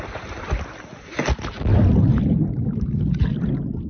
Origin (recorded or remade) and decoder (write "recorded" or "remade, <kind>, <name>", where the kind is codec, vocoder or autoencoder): recorded